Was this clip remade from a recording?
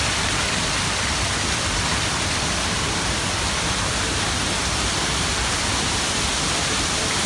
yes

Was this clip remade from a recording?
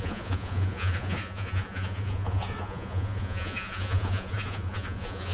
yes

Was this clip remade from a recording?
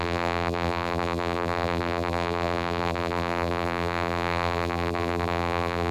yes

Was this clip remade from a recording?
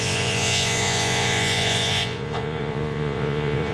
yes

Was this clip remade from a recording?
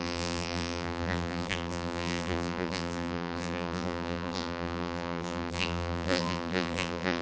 yes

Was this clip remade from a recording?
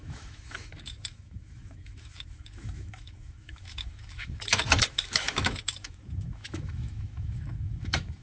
yes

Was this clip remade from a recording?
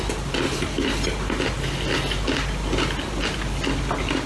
no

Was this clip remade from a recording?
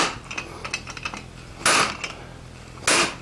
no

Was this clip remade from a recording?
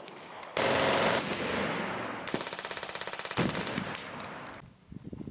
yes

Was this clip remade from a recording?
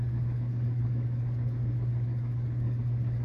yes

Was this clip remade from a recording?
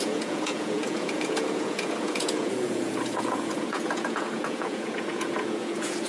yes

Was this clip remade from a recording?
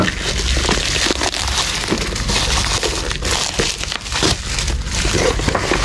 no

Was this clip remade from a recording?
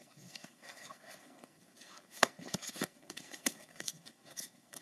yes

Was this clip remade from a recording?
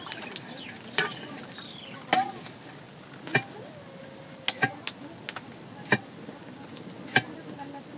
no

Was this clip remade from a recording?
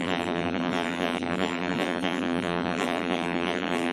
yes